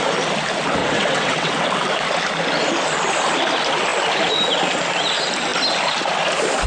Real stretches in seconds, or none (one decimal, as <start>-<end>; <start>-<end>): 0.0-0.8; 1.5-6.7